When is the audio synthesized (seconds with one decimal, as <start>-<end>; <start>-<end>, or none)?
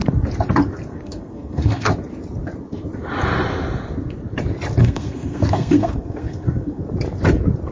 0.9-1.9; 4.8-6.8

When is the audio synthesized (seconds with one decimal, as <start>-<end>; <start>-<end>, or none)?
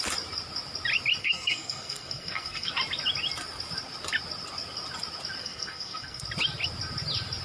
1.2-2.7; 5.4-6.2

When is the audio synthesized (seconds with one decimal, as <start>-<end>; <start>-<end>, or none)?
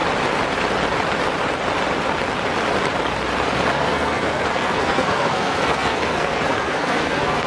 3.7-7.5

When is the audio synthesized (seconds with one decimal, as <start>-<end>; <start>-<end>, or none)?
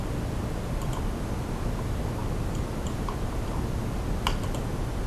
none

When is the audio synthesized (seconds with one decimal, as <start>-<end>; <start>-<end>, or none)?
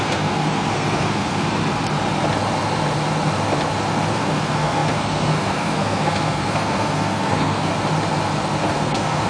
0.0-1.6; 4.1-7.7; 8.7-9.3